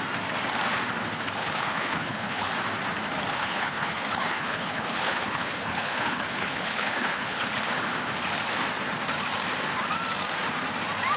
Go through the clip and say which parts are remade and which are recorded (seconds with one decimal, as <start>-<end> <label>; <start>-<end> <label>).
0.0-1.4 recorded; 1.4-2.5 remade; 2.5-3.3 recorded; 3.3-7.5 remade; 7.5-11.2 recorded